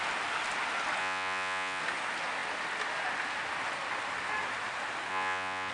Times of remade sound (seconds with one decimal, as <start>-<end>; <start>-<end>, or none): 1.0-1.8; 5.1-5.7